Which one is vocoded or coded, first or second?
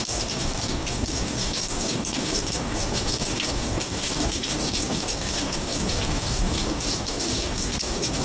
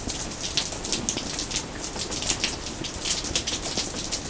first